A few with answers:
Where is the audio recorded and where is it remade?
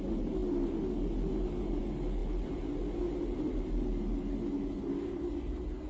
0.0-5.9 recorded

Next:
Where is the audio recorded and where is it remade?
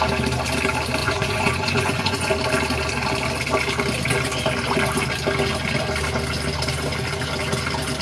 0.0-1.0 recorded; 1.0-2.3 remade; 2.3-8.0 recorded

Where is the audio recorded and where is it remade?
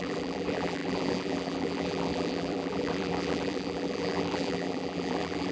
0.0-5.5 remade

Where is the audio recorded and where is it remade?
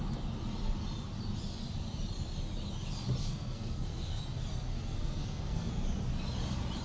0.0-3.2 recorded; 3.2-4.2 remade; 4.2-4.7 recorded; 4.7-5.7 remade; 5.7-6.8 recorded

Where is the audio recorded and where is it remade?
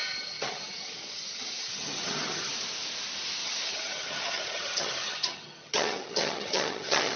0.0-2.5 remade; 2.5-3.4 recorded; 3.4-7.2 remade